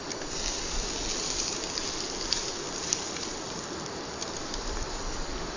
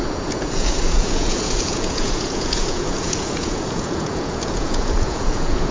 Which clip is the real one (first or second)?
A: first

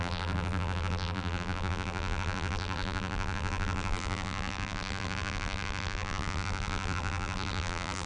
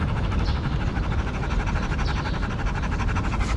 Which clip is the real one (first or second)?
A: second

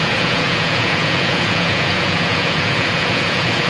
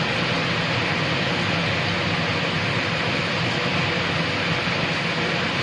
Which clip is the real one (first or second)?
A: second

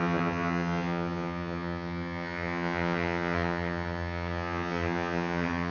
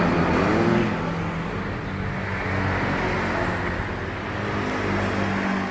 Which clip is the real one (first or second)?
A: second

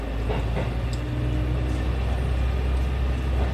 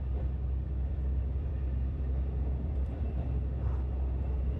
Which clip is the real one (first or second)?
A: first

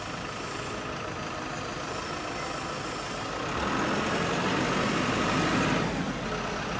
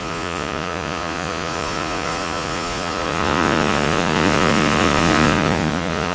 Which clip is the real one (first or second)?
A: first